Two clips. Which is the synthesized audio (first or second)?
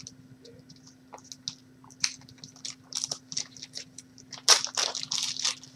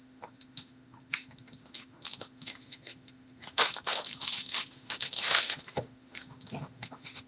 second